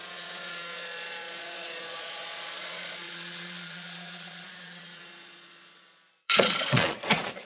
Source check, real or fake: fake